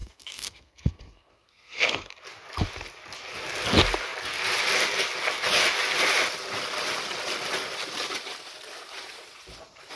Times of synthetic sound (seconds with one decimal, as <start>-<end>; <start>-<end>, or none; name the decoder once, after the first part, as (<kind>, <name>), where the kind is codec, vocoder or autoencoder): 0.0-2.1 (codec, SNAC)